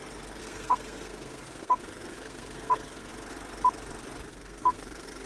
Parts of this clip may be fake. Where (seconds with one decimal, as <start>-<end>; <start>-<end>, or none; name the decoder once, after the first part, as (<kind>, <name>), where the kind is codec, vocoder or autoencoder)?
0.4-3.1 (codec, SNAC); 4.3-5.3